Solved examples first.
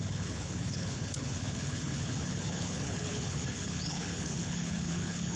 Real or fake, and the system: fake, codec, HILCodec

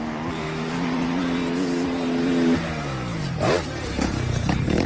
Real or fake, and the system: real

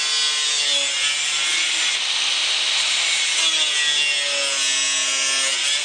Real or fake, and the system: real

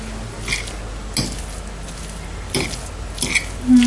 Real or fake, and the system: real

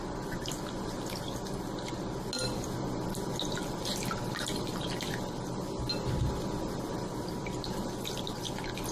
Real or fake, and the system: real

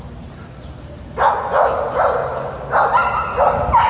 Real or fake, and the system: real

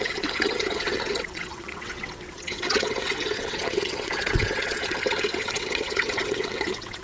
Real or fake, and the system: fake, vocoder, WaveNeXt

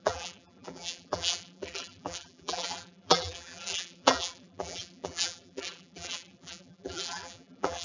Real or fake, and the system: fake, vocoder, BigVGAN v2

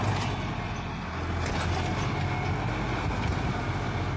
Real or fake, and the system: real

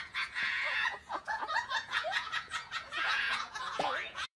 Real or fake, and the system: fake, vocoder, Vocos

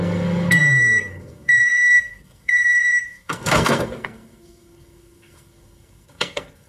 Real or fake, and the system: fake, codec, SNAC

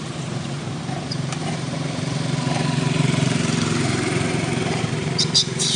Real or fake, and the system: fake, vocoder, BigVGAN v2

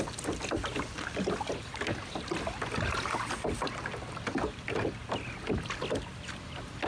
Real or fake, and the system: real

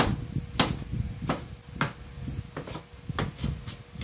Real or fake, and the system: real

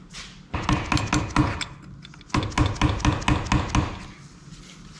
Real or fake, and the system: real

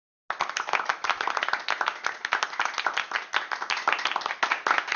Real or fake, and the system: real